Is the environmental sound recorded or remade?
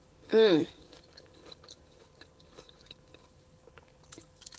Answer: remade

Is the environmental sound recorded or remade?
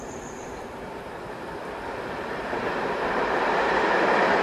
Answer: remade